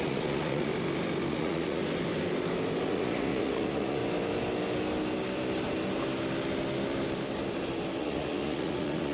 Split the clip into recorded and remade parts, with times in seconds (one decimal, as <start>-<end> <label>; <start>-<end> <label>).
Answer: 0.0-0.7 remade; 0.7-1.3 recorded; 1.3-1.8 remade; 1.8-2.9 recorded; 2.9-4.0 remade; 4.0-8.0 recorded; 8.0-9.1 remade